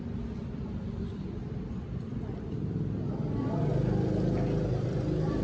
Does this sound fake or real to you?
real